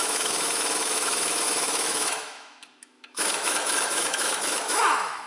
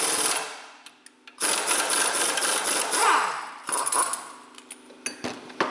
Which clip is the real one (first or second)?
second